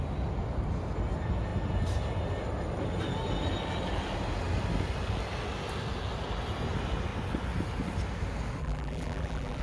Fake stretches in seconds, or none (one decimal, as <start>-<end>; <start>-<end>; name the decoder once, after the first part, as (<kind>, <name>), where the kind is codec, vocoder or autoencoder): 8.6-9.6 (vocoder, BigVGAN v2)